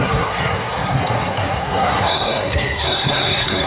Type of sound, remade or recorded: remade